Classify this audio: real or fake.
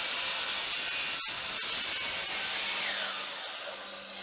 real